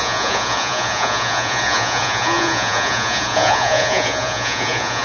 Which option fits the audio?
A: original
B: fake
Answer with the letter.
B